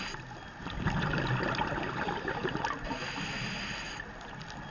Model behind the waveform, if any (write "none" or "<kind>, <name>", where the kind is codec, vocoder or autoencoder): none